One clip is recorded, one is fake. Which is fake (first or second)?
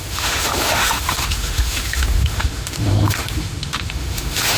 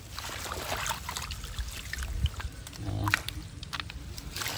first